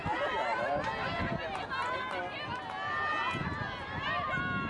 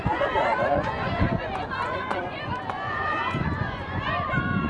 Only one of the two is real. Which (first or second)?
first